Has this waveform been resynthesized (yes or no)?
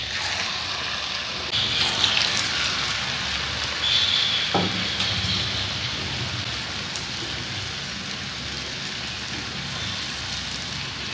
no